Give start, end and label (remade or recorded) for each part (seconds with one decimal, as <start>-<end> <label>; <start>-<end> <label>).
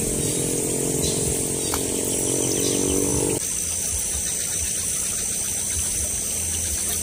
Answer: 0.0-7.0 recorded